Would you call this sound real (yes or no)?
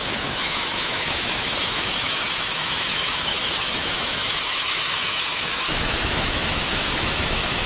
no